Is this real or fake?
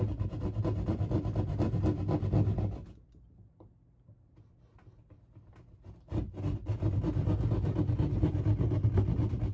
real